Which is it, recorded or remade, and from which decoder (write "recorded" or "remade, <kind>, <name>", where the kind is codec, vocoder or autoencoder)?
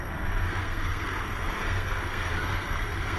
remade, codec, SNAC